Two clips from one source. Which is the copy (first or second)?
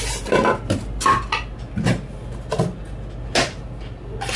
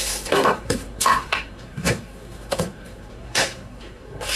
second